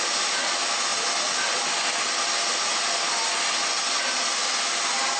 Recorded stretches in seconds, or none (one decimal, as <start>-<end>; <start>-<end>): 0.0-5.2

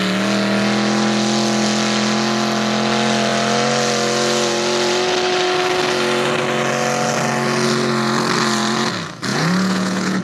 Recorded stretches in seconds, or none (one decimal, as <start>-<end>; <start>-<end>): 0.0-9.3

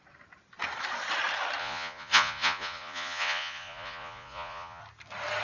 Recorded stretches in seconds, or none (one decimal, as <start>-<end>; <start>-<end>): 0.0-1.6; 4.8-5.4